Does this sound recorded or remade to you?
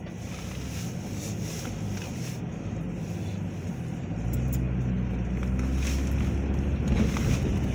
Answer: recorded